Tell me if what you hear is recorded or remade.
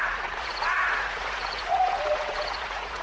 remade